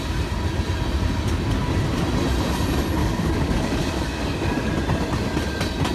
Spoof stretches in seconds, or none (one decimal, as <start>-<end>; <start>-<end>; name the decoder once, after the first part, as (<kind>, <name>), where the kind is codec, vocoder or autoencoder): 3.0-4.7 (codec, DAC)